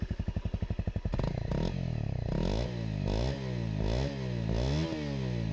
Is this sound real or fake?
real